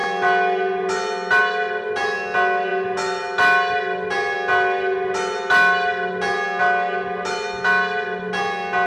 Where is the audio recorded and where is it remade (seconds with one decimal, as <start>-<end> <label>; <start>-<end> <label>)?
0.0-8.9 recorded